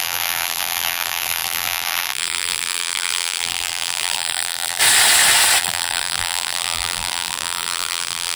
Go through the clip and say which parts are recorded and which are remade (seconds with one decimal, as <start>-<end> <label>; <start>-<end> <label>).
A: 0.0-4.8 remade; 4.8-5.6 recorded; 5.6-8.4 remade